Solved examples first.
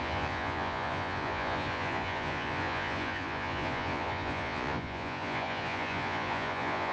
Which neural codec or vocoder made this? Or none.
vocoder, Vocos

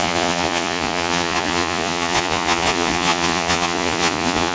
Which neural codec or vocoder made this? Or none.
vocoder, Vocos